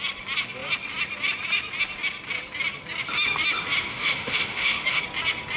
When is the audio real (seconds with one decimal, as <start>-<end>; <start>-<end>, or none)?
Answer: 0.0-3.9; 5.0-5.6